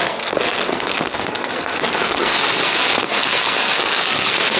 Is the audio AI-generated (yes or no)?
yes